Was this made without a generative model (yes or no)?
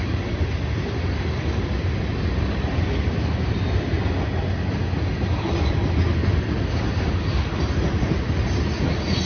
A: yes